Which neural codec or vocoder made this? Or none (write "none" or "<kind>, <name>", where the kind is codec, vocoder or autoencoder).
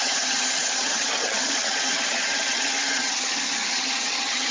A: vocoder, HiFi-GAN